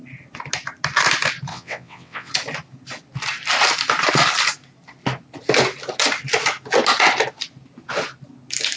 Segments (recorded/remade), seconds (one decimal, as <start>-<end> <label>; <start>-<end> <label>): 0.0-1.5 recorded; 1.5-2.3 remade; 2.3-8.8 recorded

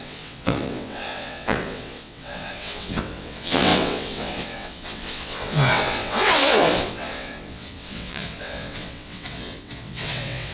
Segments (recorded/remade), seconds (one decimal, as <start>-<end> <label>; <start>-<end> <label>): 0.0-10.5 remade

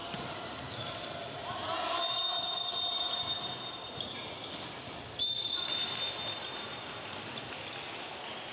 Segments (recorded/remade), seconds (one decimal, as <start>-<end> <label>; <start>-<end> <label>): 0.0-8.5 recorded

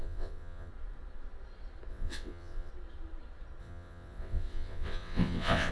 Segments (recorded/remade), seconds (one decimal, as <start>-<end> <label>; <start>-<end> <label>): 0.0-0.7 remade; 0.7-1.9 recorded; 1.9-2.7 remade; 2.7-3.6 recorded; 3.6-5.7 remade

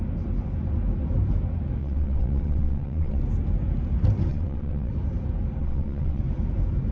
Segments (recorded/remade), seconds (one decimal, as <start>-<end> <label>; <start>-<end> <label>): 0.0-1.8 recorded; 1.8-3.2 remade; 3.2-4.3 recorded; 4.3-4.9 remade; 4.9-5.6 recorded; 5.6-6.2 remade; 6.2-6.9 recorded

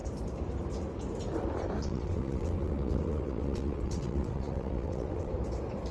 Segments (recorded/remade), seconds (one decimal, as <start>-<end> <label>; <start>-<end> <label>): 0.0-1.8 recorded; 1.8-5.3 remade; 5.3-5.9 recorded